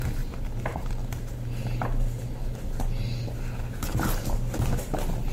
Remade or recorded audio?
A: recorded